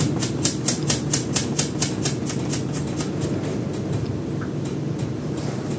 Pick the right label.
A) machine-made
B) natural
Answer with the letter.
B